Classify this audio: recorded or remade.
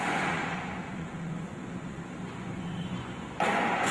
remade